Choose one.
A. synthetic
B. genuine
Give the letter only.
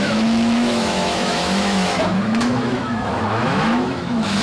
A